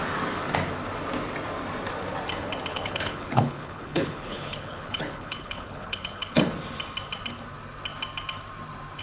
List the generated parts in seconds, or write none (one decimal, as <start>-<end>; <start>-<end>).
2.7-6.4